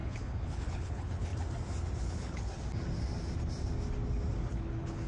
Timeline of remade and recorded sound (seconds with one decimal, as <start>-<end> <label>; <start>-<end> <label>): 0.0-1.3 remade; 1.3-2.0 recorded; 2.0-2.5 remade; 2.5-4.5 recorded; 4.5-5.1 remade